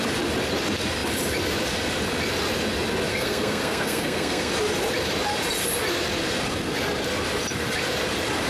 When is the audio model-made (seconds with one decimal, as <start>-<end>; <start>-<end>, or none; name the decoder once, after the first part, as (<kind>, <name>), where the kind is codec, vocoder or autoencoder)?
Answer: 3.1-4.5 (codec, SNAC)